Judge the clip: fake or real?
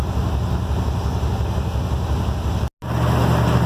real